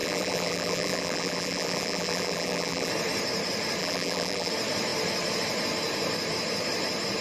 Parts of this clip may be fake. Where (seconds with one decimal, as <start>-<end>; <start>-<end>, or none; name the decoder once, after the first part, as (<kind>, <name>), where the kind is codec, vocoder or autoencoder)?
0.0-2.9 (vocoder, BigVGAN v2); 3.8-4.5